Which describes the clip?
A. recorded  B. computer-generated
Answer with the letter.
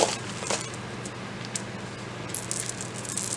A